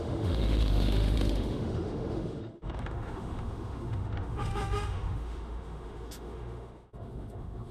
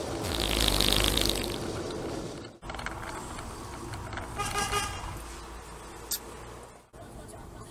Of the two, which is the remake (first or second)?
first